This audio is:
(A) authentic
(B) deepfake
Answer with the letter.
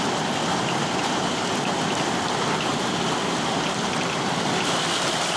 A